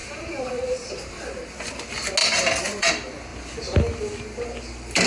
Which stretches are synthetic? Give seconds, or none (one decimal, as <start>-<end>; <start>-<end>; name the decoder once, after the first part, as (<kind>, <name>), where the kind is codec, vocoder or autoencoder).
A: 0.0-1.5 (vocoder, BigVGAN v2); 2.2-2.9